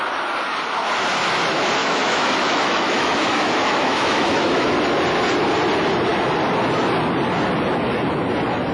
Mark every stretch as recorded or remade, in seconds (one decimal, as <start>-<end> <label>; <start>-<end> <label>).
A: 0.0-1.8 recorded; 1.8-4.7 remade; 4.7-8.7 recorded

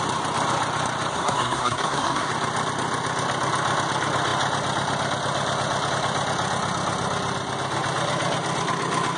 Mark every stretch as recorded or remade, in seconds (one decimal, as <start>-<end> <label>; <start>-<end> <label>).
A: 0.0-1.1 recorded; 1.1-2.3 remade; 2.3-9.2 recorded

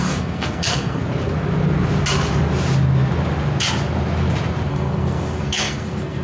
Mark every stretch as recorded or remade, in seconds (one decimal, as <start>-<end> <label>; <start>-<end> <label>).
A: 0.0-1.0 remade; 1.0-4.7 recorded; 4.7-6.2 remade

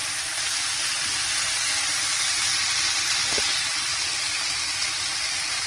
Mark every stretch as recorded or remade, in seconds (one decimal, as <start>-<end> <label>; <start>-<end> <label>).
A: 0.0-5.7 recorded

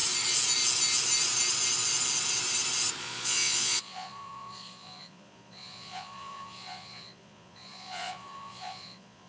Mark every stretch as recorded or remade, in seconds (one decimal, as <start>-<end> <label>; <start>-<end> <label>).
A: 0.0-3.0 recorded; 3.0-9.3 remade